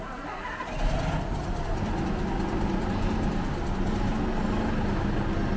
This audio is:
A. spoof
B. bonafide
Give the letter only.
B